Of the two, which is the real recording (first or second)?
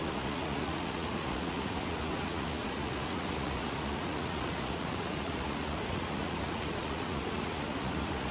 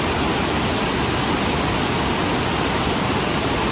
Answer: second